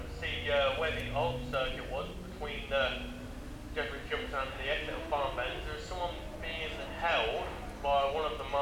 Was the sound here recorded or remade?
recorded